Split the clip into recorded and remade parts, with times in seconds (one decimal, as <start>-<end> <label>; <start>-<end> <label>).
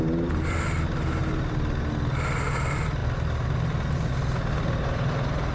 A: 0.0-5.5 recorded